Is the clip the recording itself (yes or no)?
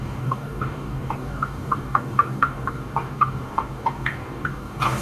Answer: no